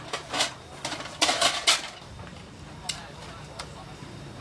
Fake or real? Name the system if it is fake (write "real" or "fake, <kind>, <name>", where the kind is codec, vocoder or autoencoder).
fake, vocoder, BigVGAN v2